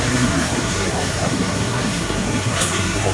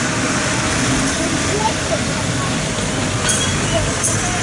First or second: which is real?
second